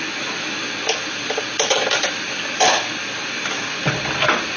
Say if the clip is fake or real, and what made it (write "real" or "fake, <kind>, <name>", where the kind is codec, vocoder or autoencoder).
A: real